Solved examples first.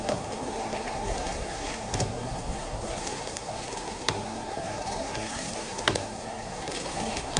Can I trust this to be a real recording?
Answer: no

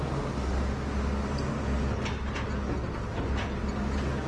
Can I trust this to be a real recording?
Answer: yes